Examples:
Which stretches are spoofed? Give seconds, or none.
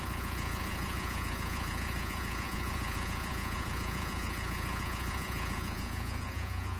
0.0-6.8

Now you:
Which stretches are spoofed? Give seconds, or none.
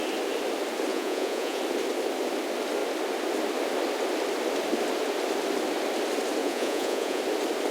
0.9-1.6; 6.4-7.2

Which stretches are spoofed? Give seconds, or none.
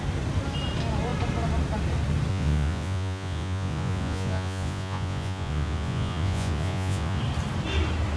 2.3-7.2